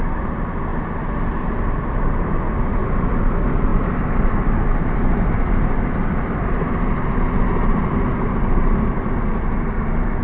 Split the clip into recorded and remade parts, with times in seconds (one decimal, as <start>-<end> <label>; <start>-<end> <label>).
0.0-0.7 recorded; 0.7-2.6 remade; 2.6-3.7 recorded; 3.7-6.7 remade; 6.7-10.2 recorded